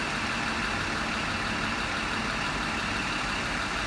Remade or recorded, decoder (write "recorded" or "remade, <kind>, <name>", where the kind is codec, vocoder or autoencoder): recorded